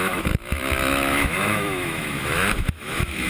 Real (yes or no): no